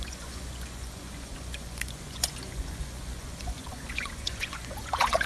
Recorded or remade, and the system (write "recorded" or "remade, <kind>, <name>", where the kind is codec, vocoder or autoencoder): remade, vocoder, Vocos